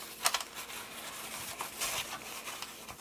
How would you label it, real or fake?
real